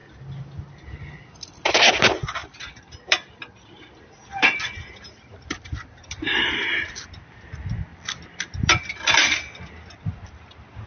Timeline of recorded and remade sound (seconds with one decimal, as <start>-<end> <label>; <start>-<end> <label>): 0.0-2.4 recorded; 2.4-6.2 remade; 6.2-7.9 recorded; 7.9-9.4 remade; 9.4-10.9 recorded